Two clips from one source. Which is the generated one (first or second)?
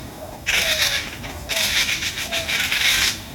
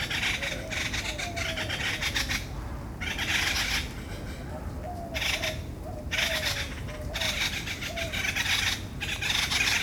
first